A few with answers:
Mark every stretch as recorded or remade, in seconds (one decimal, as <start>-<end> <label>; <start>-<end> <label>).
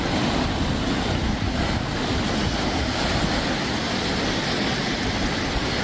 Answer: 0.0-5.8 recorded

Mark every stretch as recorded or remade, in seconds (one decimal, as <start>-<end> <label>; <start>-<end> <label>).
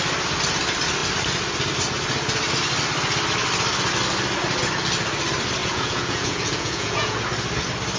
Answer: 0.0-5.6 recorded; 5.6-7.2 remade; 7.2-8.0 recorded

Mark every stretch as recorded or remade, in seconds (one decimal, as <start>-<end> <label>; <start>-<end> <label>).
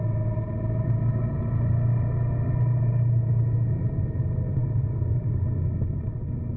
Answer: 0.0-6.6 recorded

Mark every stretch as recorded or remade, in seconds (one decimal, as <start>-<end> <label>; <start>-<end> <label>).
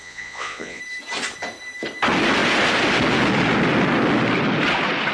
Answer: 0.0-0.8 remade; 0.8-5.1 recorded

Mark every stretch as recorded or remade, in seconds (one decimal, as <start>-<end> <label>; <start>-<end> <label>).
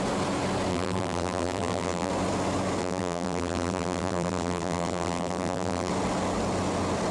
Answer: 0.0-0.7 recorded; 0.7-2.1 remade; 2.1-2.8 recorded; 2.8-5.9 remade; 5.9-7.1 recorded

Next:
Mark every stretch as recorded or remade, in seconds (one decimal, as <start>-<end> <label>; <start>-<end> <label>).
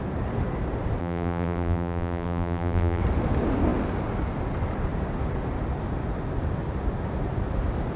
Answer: 0.0-1.0 recorded; 1.0-3.0 remade; 3.0-8.0 recorded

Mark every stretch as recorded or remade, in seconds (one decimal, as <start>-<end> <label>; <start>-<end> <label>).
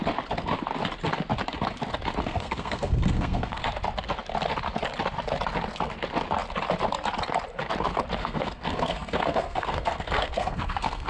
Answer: 0.0-2.2 recorded; 2.2-3.6 remade; 3.6-8.2 recorded; 8.2-11.1 remade